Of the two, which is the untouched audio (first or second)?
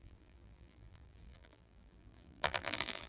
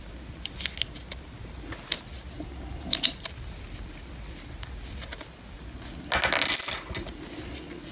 second